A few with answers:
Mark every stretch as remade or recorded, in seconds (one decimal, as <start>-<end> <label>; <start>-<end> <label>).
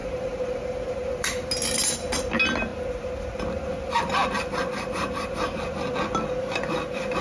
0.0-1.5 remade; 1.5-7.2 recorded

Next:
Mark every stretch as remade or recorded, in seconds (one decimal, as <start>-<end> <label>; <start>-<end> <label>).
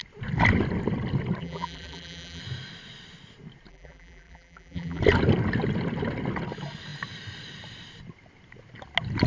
0.0-1.4 recorded; 1.4-2.4 remade; 2.4-3.7 recorded; 3.7-5.0 remade; 5.0-9.3 recorded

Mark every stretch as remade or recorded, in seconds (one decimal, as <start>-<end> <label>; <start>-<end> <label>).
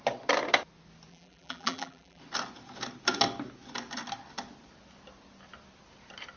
0.0-1.1 recorded; 1.1-2.2 remade; 2.2-6.4 recorded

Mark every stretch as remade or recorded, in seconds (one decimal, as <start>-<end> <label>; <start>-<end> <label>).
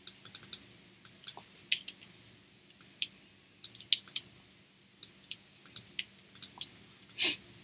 0.0-7.6 recorded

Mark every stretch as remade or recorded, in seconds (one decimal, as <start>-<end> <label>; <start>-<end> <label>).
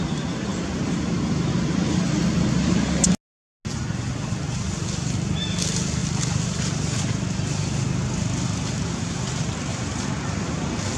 0.0-6.0 recorded; 6.0-7.1 remade; 7.1-11.0 recorded